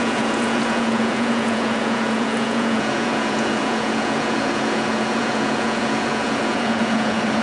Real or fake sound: fake